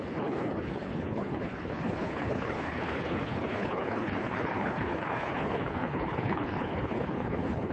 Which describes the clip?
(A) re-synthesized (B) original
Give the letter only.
A